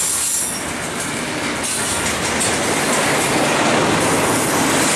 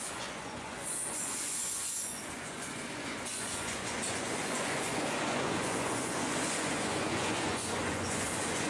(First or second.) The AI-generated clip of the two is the second